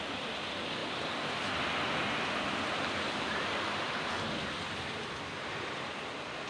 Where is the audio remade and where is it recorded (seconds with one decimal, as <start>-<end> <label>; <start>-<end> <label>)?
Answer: 0.0-0.8 recorded; 0.8-1.5 remade; 1.5-6.5 recorded